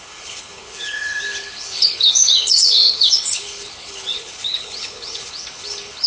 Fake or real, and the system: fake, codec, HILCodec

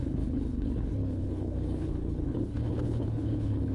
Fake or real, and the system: fake, codec, HILCodec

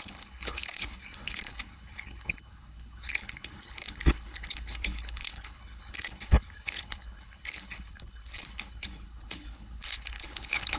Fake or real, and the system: fake, codec, HILCodec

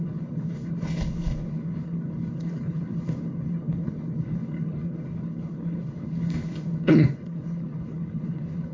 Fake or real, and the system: fake, codec, HILCodec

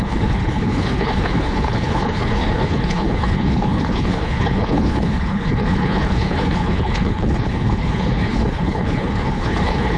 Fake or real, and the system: fake, codec, HILCodec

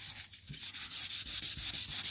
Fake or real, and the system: real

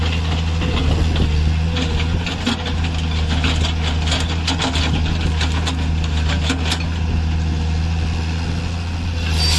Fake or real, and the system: real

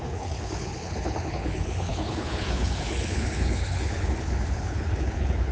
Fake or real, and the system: fake, codec, HILCodec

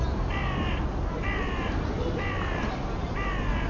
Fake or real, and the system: real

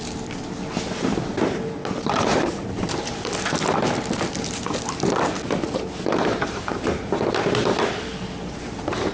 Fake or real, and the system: real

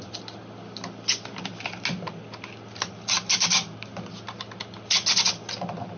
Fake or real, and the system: real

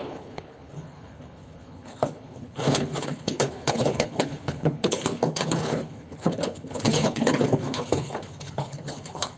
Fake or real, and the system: fake, codec, HILCodec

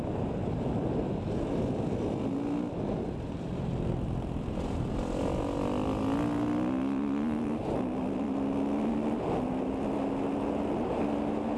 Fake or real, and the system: real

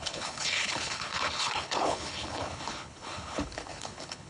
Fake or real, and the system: fake, codec, HILCodec